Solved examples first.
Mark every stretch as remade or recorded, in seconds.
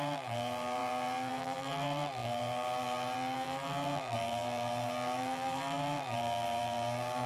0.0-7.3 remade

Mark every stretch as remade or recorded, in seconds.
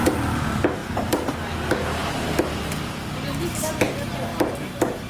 0.0-0.8 recorded; 0.8-1.3 remade; 1.3-5.1 recorded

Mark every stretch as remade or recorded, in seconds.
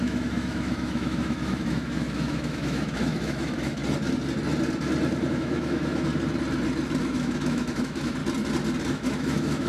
0.0-3.8 remade; 3.8-5.3 recorded; 5.3-6.1 remade; 6.1-7.0 recorded; 7.0-8.2 remade; 8.2-8.9 recorded; 8.9-9.7 remade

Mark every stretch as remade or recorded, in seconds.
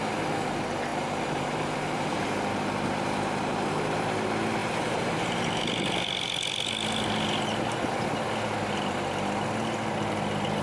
0.0-0.9 recorded; 0.9-2.3 remade; 2.3-4.6 recorded; 4.6-5.6 remade; 5.6-10.6 recorded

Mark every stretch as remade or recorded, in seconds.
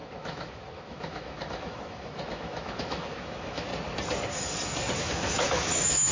0.0-3.7 remade; 3.7-5.0 recorded; 5.0-6.1 remade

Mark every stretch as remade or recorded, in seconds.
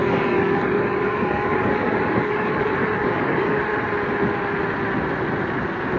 0.0-3.6 remade; 3.6-6.0 recorded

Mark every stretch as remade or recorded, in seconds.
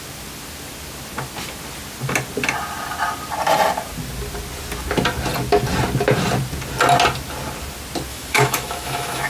0.0-8.1 recorded; 8.1-9.3 remade